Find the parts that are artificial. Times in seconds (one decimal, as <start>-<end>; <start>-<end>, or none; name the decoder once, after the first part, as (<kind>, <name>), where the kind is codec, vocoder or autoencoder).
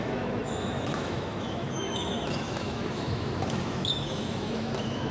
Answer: 0.0-5.1 (autoencoder, DAC-VAE)